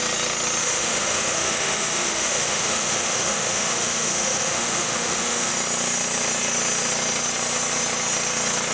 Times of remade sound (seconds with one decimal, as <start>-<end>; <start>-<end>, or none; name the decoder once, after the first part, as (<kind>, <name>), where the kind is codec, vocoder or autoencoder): 0.6-5.5 (autoencoder, DAC-VAE)